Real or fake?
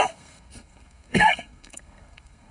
fake